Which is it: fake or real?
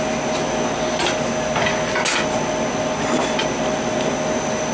real